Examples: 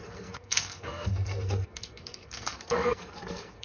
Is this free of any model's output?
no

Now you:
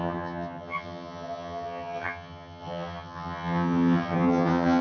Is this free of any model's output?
no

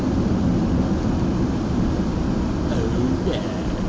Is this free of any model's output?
yes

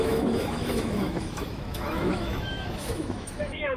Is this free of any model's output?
no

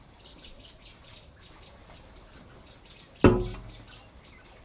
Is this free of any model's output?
yes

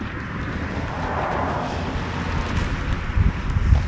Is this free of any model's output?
yes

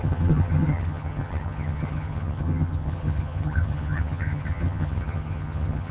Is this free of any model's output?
no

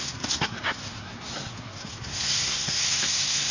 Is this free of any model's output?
no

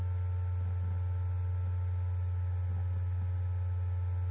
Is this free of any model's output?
yes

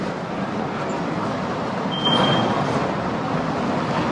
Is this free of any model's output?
yes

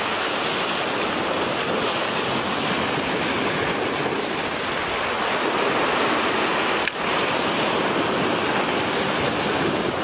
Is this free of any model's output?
yes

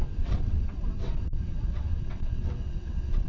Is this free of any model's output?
no